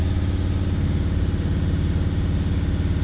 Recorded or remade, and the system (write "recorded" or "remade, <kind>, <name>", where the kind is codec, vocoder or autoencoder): recorded